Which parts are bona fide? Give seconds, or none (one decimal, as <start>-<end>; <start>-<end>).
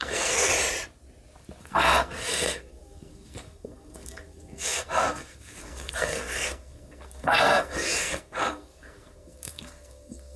0.5-1.6